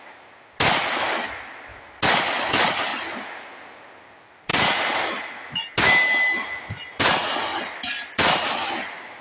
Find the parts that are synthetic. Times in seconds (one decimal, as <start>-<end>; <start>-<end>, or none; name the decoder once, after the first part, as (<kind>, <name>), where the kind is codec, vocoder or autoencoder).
2.9-3.6 (vocoder, BigVGAN v2); 4.5-5.3; 7.5-9.2